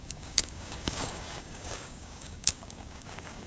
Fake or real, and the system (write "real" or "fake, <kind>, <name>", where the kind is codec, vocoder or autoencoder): fake, codec, DAC